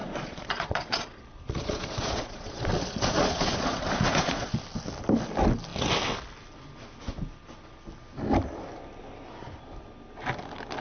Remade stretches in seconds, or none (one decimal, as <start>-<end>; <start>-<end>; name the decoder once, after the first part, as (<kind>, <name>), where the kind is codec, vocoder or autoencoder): 0.0-4.5 (vocoder, Vocos)